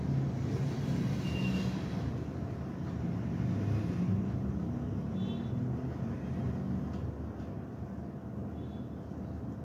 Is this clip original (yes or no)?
yes